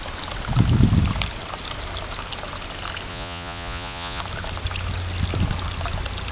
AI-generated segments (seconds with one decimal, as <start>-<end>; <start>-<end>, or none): 3.1-4.2